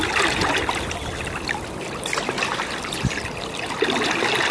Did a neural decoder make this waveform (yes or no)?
no